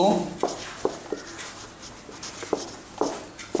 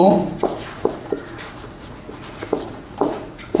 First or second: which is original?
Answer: first